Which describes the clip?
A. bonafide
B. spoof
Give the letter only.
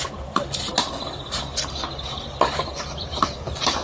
A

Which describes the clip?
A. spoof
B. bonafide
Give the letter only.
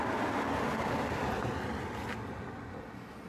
B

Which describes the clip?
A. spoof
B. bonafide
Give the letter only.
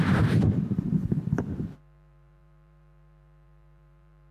A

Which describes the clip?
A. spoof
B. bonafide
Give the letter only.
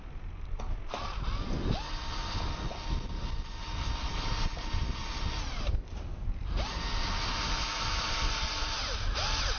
B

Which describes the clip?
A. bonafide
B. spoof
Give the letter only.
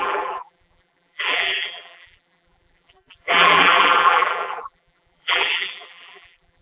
B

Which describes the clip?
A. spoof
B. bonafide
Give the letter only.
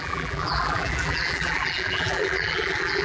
A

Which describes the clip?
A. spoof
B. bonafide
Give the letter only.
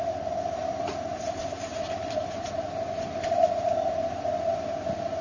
A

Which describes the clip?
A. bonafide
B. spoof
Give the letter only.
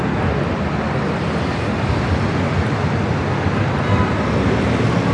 A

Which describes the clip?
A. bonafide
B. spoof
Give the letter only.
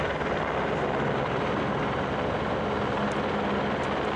A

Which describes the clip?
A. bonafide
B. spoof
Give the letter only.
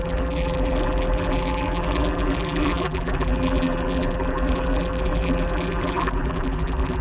B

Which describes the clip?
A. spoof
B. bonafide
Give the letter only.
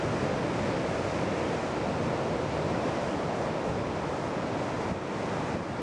B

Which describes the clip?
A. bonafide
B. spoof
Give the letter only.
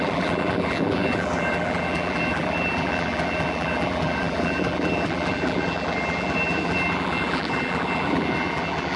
B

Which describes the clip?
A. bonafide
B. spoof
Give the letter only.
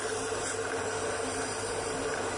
B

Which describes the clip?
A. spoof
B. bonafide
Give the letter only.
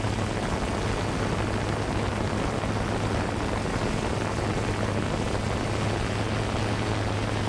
B